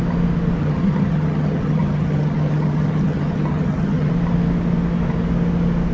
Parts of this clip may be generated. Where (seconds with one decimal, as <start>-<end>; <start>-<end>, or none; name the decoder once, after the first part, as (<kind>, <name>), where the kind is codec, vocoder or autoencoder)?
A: 0.6-4.1 (vocoder, HiFi-GAN)